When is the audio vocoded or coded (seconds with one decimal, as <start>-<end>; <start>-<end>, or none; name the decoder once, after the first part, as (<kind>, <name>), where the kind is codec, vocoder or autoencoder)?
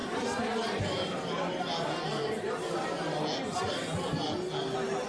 none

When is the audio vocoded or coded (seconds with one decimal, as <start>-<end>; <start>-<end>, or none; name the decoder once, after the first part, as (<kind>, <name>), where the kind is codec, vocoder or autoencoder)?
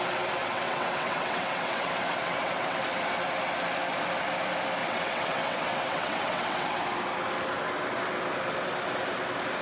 0.4-2.8 (vocoder, WaveNeXt); 4.8-6.8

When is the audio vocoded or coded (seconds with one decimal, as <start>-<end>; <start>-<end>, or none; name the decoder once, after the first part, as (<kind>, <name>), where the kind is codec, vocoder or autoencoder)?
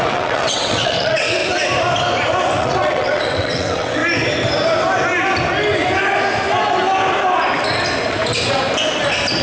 0.0-1.4 (vocoder, WaveNeXt); 2.6-4.0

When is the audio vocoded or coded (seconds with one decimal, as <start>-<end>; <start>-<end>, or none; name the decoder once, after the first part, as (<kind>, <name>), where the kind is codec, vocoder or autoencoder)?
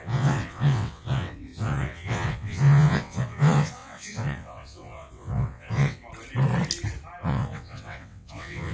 0.0-6.0 (vocoder, WaveNeXt); 7.2-8.7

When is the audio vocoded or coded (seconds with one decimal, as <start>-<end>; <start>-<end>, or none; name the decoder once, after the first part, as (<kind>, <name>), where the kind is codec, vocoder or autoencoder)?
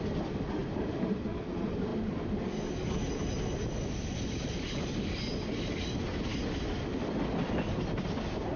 none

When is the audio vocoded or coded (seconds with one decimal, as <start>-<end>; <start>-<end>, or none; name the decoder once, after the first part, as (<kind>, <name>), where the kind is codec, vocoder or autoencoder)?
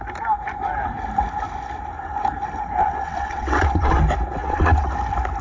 2.8-4.0 (vocoder, WaveNeXt); 4.4-4.9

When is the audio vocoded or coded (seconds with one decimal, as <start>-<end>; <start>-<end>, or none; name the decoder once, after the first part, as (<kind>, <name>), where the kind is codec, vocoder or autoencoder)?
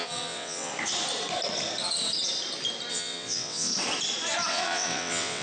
0.0-0.7 (vocoder, WaveNeXt); 2.9-3.7; 4.5-5.4